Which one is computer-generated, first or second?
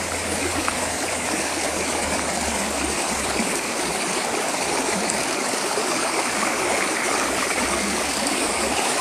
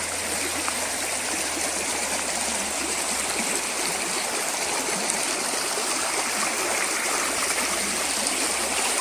first